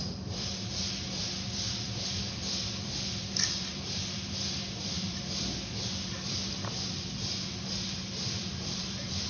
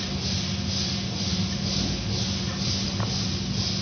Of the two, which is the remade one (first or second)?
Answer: first